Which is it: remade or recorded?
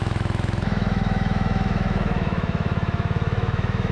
remade